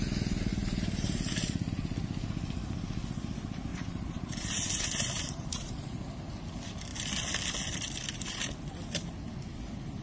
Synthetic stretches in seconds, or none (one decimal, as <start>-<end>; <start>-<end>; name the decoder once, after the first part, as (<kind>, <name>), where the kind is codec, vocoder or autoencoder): 0.5-1.7 (vocoder, BigVGAN v2); 3.7-6.0

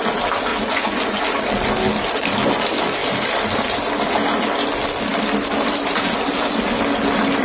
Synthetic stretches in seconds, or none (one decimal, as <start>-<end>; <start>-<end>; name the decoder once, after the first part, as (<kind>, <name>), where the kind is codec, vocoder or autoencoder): 0.5-1.2 (vocoder, Vocos)